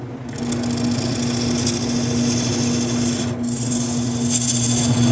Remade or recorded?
recorded